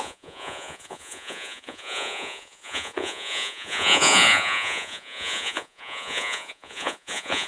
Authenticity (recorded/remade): remade